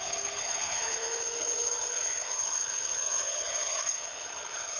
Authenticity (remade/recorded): remade